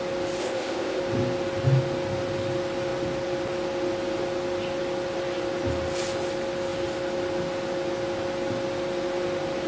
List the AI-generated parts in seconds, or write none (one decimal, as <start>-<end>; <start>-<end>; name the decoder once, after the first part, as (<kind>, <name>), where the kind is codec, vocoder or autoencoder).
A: 0.4-1.0 (codec, ZipCodec)